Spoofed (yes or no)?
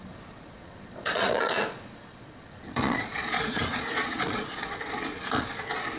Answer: yes